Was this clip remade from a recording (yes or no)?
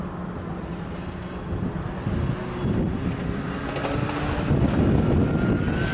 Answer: no